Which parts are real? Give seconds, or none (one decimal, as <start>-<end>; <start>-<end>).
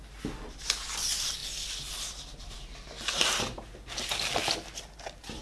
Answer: 0.0-5.4